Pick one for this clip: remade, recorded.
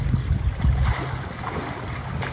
recorded